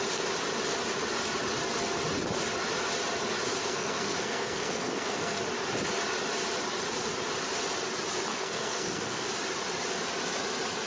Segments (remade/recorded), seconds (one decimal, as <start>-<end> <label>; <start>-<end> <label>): 0.0-3.6 recorded; 3.6-5.4 remade; 5.4-8.3 recorded; 8.3-9.3 remade; 9.3-10.9 recorded